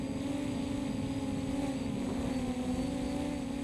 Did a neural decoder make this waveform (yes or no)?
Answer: no